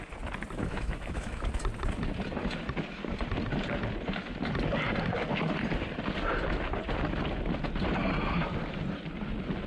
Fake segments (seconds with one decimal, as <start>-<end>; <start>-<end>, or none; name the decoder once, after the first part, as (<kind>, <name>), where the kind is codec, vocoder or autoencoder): 0.6-1.5 (autoencoder, DAC-VAE)